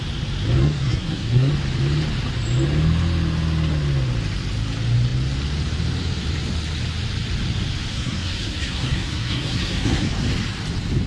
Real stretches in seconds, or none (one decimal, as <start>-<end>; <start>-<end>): 0.0-0.6; 1.5-7.9; 10.1-11.1